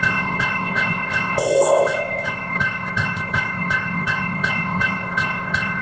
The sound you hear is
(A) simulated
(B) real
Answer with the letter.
A